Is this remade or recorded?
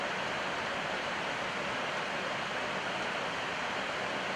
recorded